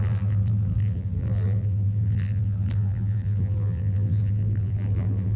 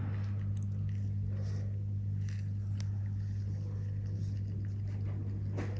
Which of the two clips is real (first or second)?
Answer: second